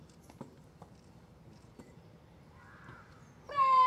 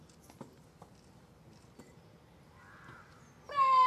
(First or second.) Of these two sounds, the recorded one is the second